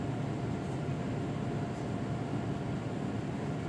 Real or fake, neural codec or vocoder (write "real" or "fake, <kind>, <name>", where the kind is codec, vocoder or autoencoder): real